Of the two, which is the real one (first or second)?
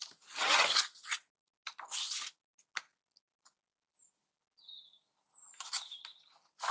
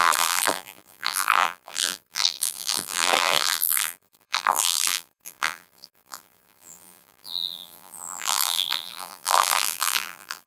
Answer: first